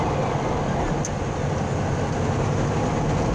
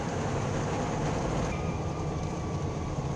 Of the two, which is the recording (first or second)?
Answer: first